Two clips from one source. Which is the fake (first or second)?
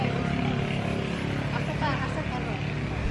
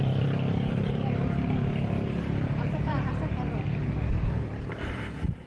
second